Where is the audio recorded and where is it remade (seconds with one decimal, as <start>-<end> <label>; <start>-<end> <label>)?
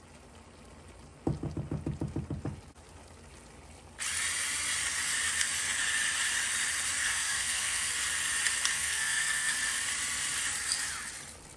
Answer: 0.0-7.0 recorded; 7.0-7.9 remade; 7.9-8.7 recorded; 8.7-9.5 remade; 9.5-11.6 recorded